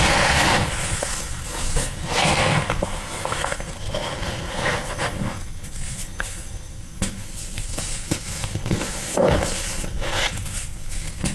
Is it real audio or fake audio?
fake